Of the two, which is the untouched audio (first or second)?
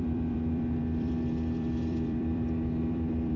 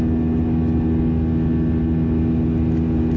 second